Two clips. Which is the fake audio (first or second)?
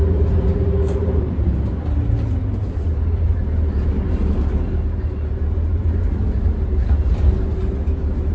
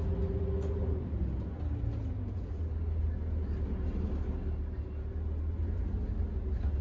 first